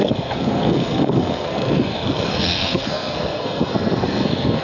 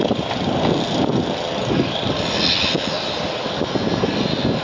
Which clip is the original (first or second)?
second